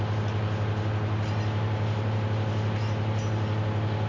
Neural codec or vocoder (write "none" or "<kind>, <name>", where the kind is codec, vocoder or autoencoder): none